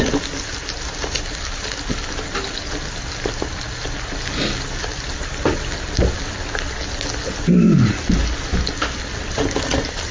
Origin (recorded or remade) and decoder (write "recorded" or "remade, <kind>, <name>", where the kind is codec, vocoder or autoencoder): recorded